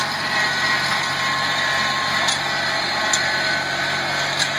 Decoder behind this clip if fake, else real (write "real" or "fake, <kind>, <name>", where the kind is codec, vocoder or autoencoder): real